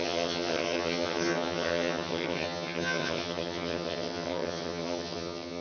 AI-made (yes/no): yes